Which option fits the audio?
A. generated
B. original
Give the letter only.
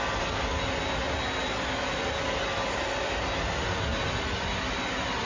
B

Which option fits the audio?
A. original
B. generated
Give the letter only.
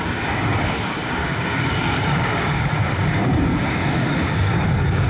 B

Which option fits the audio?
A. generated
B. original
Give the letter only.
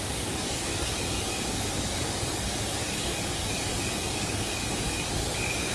A